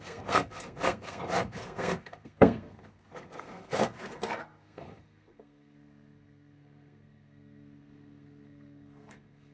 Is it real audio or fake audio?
fake